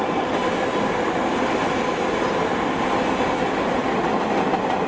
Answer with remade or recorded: recorded